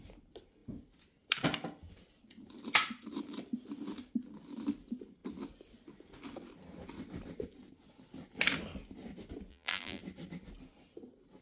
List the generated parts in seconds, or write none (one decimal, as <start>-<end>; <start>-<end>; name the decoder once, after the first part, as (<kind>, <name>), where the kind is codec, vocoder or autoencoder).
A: 9.5-10.0 (vocoder, BigVGAN v2)